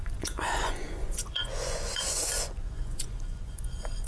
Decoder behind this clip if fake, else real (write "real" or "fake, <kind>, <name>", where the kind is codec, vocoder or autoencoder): fake, vocoder, Vocos